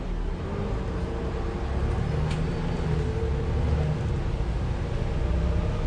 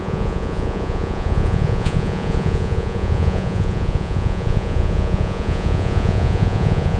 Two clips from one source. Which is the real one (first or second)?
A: first